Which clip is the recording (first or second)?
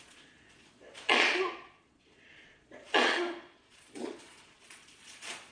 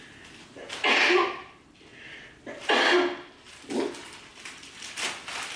second